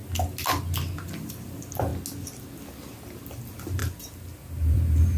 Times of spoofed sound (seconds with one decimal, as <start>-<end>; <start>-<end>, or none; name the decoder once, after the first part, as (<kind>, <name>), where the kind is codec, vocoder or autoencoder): 1.1-1.9 (vocoder, BigVGAN v2); 2.6-3.8; 4.6-5.2